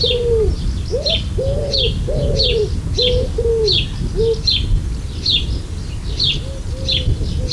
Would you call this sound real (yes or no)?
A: yes